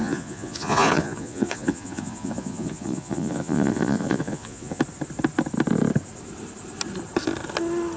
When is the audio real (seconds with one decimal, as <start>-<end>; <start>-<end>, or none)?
4.8-8.0